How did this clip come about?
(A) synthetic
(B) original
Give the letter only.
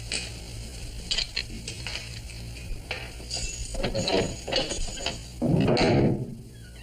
B